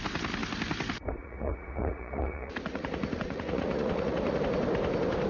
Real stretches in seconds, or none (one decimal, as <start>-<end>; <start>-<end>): 0.0-1.2; 4.4-5.3